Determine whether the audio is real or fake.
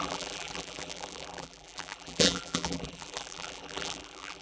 fake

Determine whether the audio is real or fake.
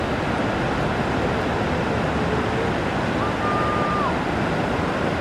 real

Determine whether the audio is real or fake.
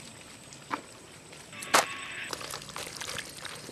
fake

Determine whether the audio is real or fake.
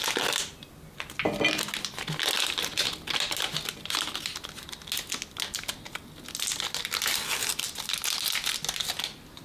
real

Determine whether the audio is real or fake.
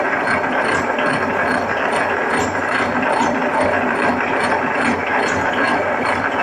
fake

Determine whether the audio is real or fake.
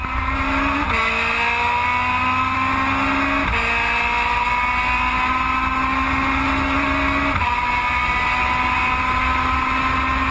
real